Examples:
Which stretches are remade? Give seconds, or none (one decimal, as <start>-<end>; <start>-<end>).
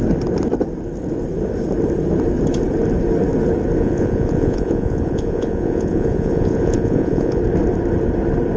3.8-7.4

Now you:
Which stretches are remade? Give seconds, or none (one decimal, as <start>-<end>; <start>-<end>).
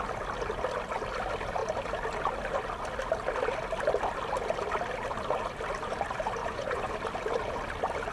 6.4-6.9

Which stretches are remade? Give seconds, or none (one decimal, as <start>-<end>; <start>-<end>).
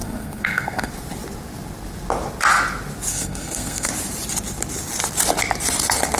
0.0-0.9; 3.1-3.9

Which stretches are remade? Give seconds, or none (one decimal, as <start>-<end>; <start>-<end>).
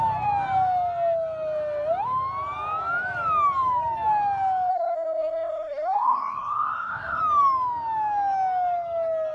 4.7-7.2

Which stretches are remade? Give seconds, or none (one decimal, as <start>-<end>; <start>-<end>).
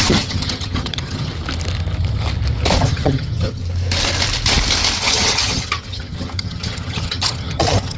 0.0-1.3; 2.8-3.6; 5.0-8.0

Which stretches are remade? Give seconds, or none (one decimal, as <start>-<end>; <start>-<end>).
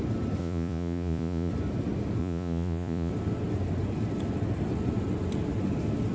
0.4-1.5; 2.2-3.1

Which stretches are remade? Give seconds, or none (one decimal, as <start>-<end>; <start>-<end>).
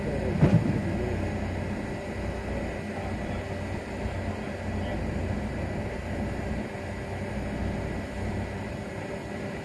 4.9-6.5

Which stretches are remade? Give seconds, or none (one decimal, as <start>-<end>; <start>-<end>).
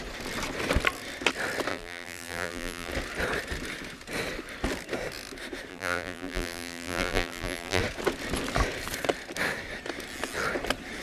1.7-2.9; 5.7-7.8